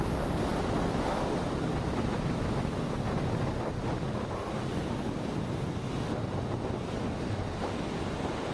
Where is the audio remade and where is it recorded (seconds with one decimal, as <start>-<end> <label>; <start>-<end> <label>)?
0.0-8.5 recorded